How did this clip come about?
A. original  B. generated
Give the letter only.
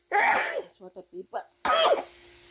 A